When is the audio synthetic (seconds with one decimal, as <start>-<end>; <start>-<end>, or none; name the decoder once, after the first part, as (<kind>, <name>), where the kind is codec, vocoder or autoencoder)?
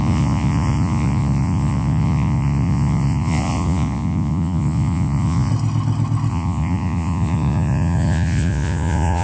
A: 0.0-5.5 (vocoder, Vocos); 6.3-9.2